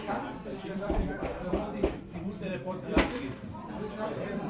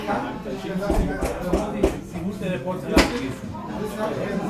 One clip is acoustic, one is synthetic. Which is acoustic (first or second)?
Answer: second